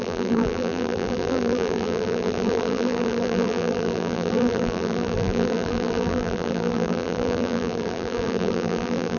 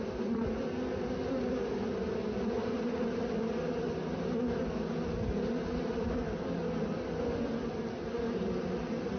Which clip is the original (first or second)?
second